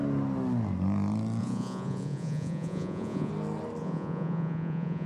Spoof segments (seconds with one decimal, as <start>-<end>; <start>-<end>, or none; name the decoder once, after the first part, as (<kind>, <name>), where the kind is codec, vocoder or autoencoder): 1.4-3.3 (vocoder, Vocos); 3.8-5.1